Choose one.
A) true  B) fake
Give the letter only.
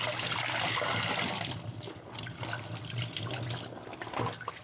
B